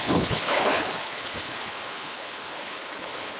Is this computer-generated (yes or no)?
yes